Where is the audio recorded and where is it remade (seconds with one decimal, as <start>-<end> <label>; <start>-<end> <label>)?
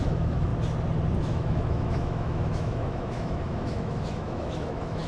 0.0-0.5 remade; 0.5-1.2 recorded; 1.2-5.1 remade